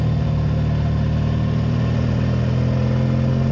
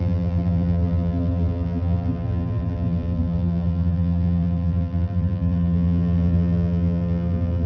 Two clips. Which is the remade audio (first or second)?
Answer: second